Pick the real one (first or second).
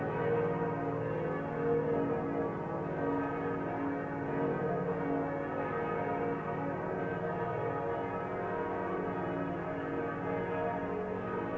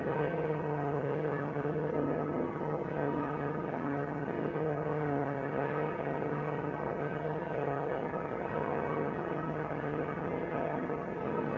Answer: first